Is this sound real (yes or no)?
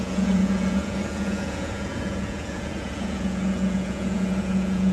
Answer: no